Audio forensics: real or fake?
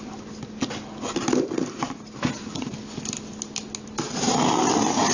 real